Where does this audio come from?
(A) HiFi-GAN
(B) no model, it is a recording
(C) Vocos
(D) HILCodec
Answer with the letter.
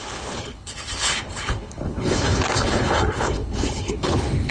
D